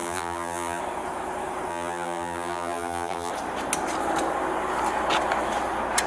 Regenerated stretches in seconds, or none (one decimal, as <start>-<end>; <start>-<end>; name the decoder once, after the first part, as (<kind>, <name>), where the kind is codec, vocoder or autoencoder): 0.0-0.8 (vocoder, BigVGAN v2); 1.7-3.3